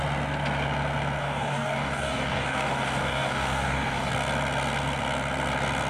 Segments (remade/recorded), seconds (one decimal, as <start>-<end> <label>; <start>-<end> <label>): 0.0-1.2 recorded; 1.2-4.1 remade; 4.1-5.9 recorded